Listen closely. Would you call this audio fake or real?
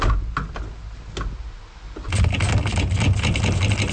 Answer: real